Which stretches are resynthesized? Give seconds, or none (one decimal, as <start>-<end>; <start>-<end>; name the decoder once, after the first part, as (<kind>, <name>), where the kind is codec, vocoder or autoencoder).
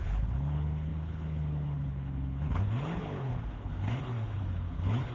0.0-5.1 (codec, HILCodec)